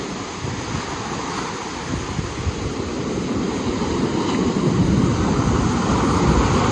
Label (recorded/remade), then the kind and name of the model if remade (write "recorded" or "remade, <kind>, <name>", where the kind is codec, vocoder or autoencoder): recorded